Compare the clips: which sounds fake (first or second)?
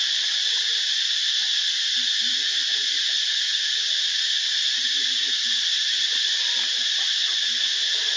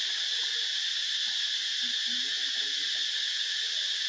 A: first